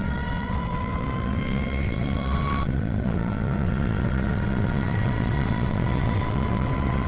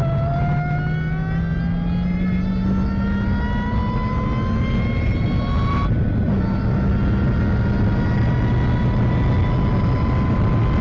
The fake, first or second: first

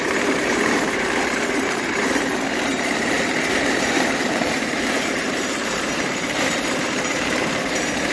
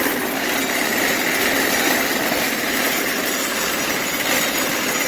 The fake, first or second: first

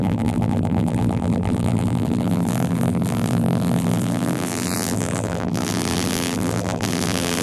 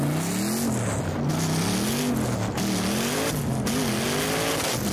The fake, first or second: first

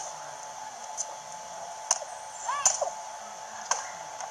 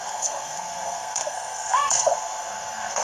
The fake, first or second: second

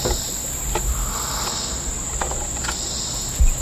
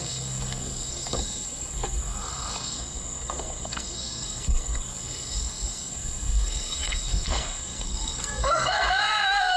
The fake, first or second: second